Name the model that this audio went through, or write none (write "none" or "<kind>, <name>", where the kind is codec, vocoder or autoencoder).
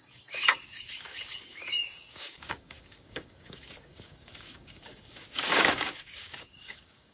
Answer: codec, DAC